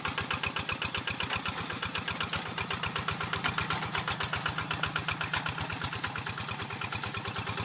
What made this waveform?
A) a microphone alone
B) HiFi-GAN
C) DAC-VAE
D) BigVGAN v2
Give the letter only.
A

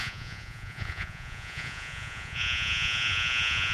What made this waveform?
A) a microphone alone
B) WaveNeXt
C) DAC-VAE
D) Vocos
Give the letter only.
D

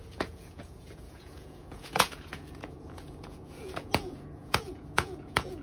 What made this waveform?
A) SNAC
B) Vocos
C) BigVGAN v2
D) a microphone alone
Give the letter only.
B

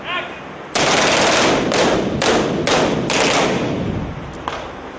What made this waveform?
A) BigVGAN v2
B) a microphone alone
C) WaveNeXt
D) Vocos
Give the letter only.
B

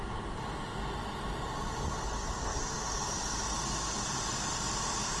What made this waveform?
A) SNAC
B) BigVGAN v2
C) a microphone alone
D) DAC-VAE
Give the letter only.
C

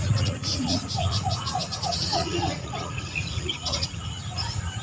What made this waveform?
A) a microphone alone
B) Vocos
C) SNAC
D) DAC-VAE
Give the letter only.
B